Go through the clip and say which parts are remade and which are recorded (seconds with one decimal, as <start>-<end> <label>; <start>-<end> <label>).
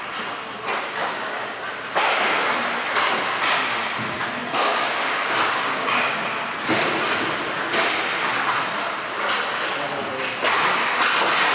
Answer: 0.0-1.0 recorded; 1.0-1.6 remade; 1.6-4.4 recorded; 4.4-6.2 remade; 6.2-11.5 recorded